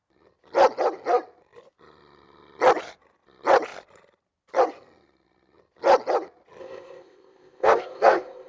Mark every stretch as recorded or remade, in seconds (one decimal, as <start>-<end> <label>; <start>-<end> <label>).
0.0-6.6 recorded; 6.6-8.5 remade

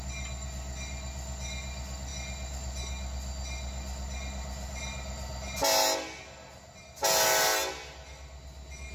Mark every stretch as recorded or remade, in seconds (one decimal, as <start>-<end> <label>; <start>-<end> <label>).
0.0-8.9 recorded